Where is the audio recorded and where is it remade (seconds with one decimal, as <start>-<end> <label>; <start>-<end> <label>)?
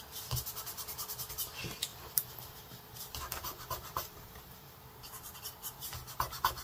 0.0-1.9 recorded; 1.9-5.9 remade; 5.9-6.6 recorded